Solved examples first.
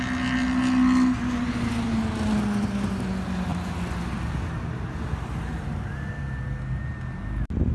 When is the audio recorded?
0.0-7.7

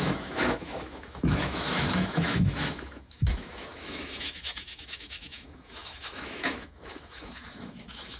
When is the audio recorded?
none

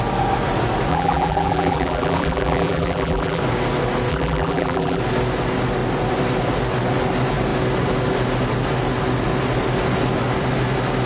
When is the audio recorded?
0.0-0.9; 3.4-4.1; 5.0-11.1

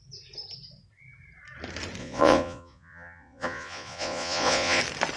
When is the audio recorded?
0.0-2.0; 4.8-5.2